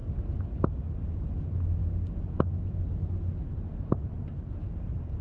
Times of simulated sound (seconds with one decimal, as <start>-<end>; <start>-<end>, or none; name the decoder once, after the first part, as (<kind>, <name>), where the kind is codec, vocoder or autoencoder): none